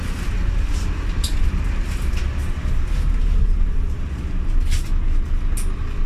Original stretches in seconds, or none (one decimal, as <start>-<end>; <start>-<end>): 0.0-6.1